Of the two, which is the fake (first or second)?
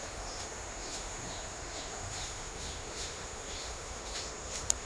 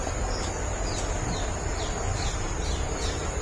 first